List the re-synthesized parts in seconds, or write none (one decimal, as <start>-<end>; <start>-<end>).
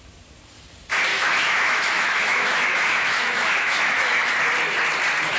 1.1-4.3